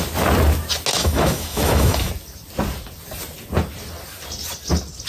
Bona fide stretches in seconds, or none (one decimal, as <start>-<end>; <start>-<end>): 0.0-0.9; 2.1-5.1